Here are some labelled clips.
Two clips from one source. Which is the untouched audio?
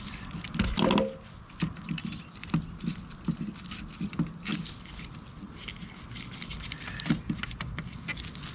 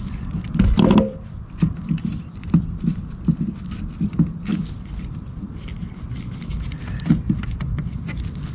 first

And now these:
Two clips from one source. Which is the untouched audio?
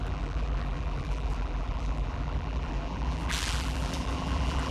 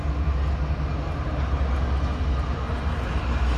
second